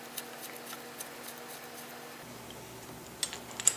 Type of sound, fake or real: real